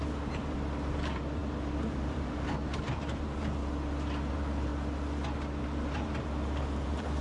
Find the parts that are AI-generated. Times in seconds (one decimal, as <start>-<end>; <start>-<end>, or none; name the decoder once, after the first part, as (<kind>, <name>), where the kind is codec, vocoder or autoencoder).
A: 0.0-3.6 (vocoder, BigVGAN v2); 4.3-4.7; 5.6-7.2